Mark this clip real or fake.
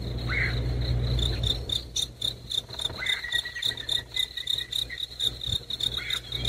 real